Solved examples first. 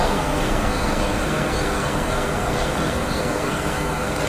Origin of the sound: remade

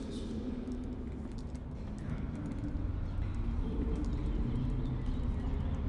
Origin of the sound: recorded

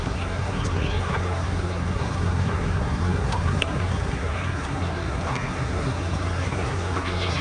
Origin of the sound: remade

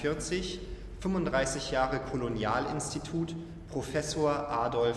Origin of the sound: recorded